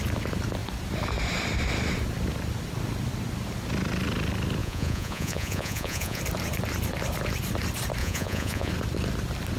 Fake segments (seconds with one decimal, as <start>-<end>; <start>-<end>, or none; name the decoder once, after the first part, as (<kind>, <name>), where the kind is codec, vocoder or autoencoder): 4.6-6.2 (vocoder, Vocos); 8.0-8.7

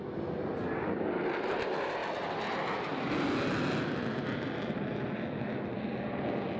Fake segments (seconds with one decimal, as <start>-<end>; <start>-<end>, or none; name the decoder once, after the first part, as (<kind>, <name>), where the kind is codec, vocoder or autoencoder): none

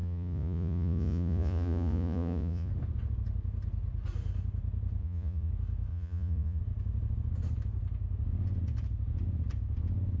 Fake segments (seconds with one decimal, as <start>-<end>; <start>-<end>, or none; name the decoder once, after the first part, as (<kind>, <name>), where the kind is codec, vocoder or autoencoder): 0.0-2.7 (vocoder, Vocos); 5.0-5.5; 5.9-6.6

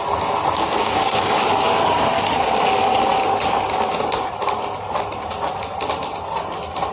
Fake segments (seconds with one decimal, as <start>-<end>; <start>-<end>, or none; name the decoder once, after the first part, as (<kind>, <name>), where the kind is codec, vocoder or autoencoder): 0.8-1.3 (codec, DAC)

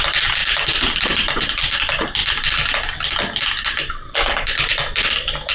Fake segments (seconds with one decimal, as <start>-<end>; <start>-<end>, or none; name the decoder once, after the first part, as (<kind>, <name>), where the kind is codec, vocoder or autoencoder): 0.4-1.6 (vocoder, BigVGAN v2)

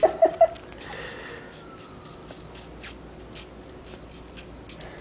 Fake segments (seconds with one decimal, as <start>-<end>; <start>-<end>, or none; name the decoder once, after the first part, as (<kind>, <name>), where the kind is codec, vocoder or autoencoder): none

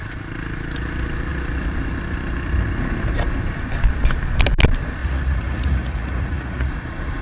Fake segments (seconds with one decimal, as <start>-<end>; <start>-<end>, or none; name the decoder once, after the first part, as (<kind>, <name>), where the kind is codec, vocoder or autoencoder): 5.0-6.7 (vocoder, Vocos)

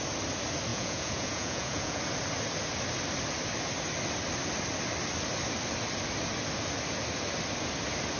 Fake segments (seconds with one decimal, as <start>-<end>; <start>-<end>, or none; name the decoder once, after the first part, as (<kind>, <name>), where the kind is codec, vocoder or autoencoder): 0.7-2.0 (vocoder, Vocos)